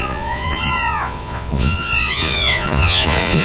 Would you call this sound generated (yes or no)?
yes